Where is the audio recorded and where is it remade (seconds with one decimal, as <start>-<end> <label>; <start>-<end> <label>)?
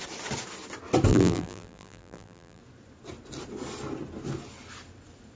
0.0-1.1 recorded; 1.1-2.6 remade; 2.6-5.4 recorded